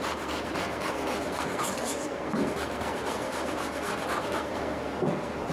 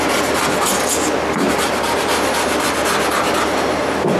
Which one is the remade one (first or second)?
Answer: first